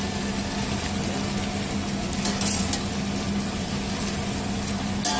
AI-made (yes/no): no